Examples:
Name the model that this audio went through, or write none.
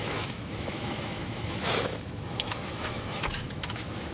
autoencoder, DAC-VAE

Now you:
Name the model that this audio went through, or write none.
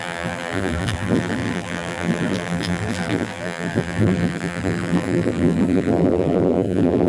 vocoder, BigVGAN v2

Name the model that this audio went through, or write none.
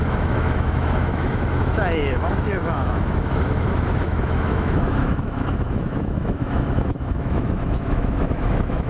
autoencoder, DAC-VAE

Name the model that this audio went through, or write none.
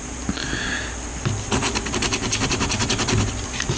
none